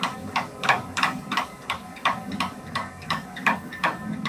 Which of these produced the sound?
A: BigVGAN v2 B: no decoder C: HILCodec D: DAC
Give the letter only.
D